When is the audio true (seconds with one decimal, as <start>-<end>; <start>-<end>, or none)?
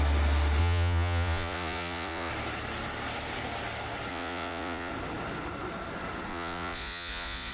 0.0-0.6; 2.3-4.1; 4.9-6.3